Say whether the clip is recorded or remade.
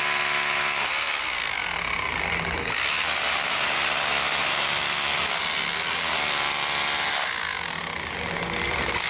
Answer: recorded